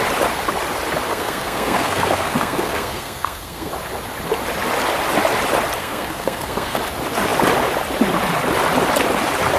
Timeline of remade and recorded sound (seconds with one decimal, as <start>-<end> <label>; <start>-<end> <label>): 0.0-1.1 recorded; 1.1-3.7 remade; 3.7-5.8 recorded; 5.8-6.8 remade; 6.8-9.6 recorded